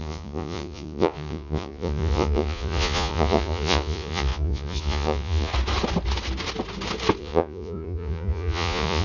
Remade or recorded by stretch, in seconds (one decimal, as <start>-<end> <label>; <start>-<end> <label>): 0.0-5.5 remade; 5.5-7.2 recorded; 7.2-9.0 remade